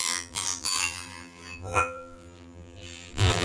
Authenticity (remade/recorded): remade